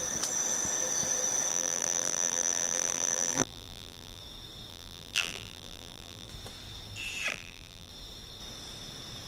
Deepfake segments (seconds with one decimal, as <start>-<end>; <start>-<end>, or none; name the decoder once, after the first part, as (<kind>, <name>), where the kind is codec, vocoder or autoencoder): 1.5-4.2 (vocoder, BigVGAN v2); 4.7-6.3; 7.3-7.9